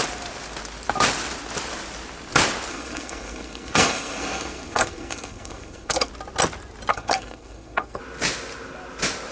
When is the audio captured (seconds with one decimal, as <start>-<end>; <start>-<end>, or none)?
0.0-2.7; 6.1-6.9; 8.0-9.3